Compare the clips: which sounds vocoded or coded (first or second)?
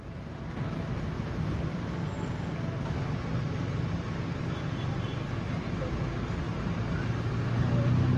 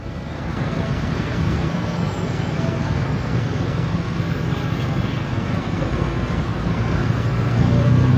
second